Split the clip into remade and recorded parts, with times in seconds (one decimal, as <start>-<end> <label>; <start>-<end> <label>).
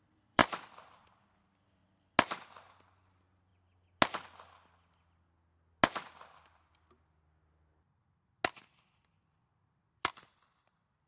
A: 0.0-1.8 remade; 1.8-2.7 recorded; 2.7-3.5 remade; 3.5-8.6 recorded; 8.6-11.1 remade